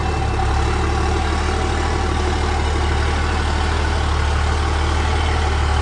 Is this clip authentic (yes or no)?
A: yes